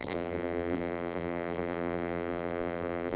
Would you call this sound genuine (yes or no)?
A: no